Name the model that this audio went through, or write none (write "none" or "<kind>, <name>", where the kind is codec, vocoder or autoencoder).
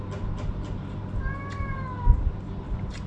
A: none